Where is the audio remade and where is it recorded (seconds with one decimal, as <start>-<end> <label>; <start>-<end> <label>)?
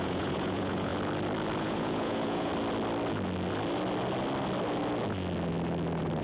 0.0-0.9 remade; 0.9-1.6 recorded; 1.6-2.5 remade; 2.5-6.2 recorded